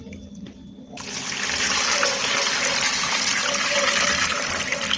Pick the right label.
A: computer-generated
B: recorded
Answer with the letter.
A